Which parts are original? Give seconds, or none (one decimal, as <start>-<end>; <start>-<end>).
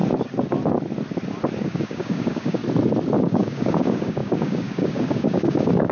0.0-1.6; 2.6-3.2